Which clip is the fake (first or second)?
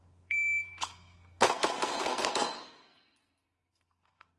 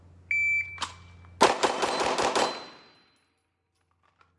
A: first